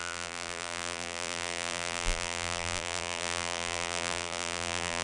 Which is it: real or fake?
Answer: fake